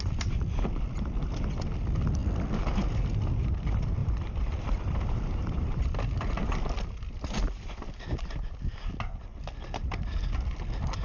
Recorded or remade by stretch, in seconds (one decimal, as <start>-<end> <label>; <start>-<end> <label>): 0.0-4.0 recorded; 4.0-5.8 remade; 5.8-11.0 recorded